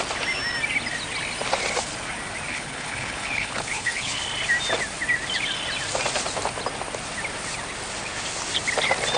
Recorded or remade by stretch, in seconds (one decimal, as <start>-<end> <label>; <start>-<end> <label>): 0.0-2.5 recorded; 2.5-4.2 remade; 4.2-9.2 recorded